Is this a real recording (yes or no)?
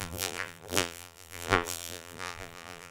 no